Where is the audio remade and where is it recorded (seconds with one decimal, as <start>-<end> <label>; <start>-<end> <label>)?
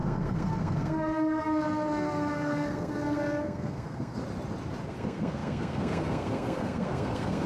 0.0-4.2 remade; 4.2-4.9 recorded; 4.9-7.5 remade